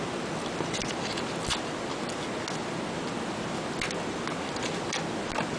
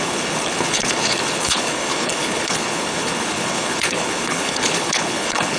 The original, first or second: first